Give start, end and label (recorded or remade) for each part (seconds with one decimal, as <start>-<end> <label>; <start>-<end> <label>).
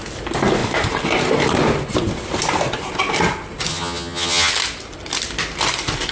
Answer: 0.0-3.7 recorded; 3.7-4.5 remade; 4.5-6.1 recorded